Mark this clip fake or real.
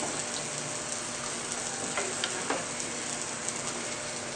real